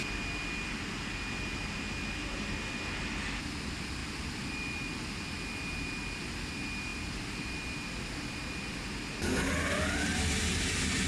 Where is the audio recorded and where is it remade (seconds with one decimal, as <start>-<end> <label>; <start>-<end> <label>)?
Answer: 0.0-11.1 recorded